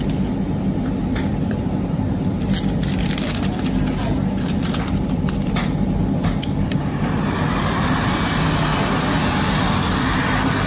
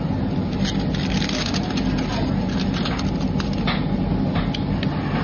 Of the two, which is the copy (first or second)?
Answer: first